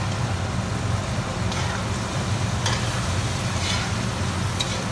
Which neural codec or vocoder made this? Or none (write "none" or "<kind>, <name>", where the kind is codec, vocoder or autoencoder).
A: none